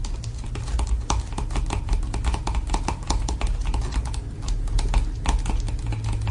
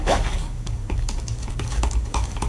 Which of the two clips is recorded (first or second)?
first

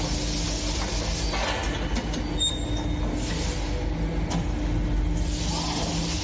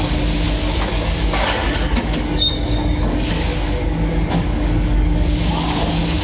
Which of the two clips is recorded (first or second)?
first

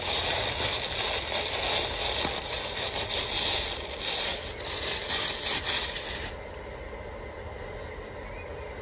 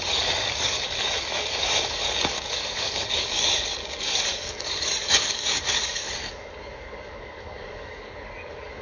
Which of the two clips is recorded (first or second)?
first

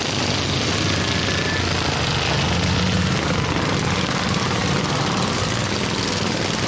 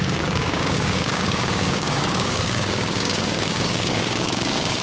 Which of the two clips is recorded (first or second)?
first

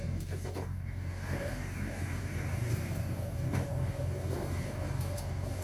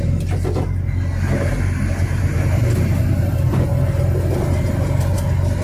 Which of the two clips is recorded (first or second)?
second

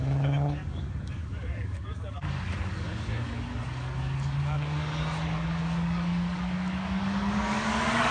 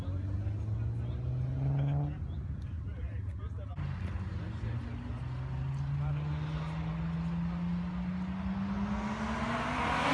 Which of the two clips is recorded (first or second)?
second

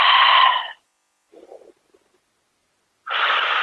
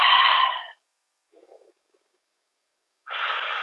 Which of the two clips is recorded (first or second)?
first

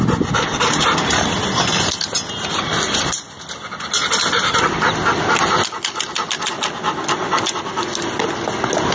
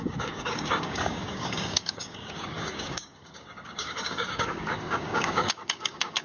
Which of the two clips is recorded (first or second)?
first